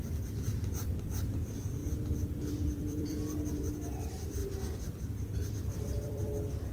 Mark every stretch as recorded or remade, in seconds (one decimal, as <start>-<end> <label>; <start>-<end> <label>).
0.0-0.5 remade; 0.5-1.3 recorded; 1.3-4.4 remade; 4.4-5.5 recorded; 5.5-6.7 remade